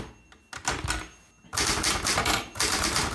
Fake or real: real